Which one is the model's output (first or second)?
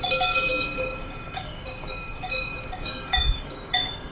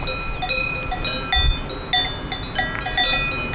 first